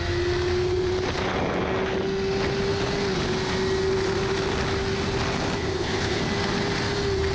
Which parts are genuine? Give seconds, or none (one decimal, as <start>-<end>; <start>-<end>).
0.0-5.6; 6.2-7.3